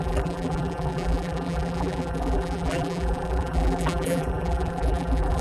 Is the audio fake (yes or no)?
yes